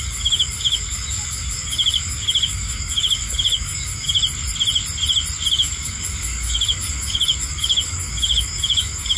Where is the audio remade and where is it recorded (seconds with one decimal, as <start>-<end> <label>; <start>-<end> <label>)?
0.0-4.2 remade; 4.2-5.5 recorded; 5.5-9.2 remade